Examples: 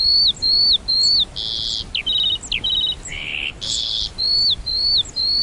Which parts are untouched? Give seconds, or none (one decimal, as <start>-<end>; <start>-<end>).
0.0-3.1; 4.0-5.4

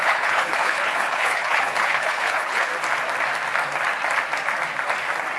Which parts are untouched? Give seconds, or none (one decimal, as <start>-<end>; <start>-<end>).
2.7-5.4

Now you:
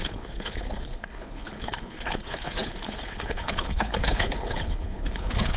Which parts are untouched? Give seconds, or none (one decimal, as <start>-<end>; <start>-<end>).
none

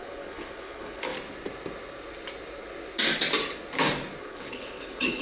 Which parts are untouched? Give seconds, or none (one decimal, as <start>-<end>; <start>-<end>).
1.1-4.2

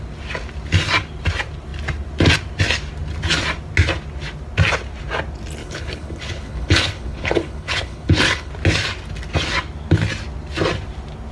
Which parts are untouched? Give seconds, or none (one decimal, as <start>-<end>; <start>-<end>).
0.0-5.6; 8.5-11.3

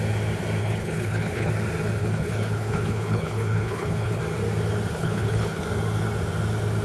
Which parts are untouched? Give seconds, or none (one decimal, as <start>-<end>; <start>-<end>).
0.0-0.6; 1.5-2.0; 4.2-4.9; 5.6-6.8